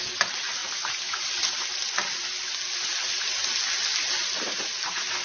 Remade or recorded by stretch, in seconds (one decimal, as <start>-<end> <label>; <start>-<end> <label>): 0.0-5.2 recorded